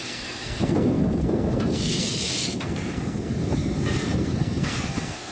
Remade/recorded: remade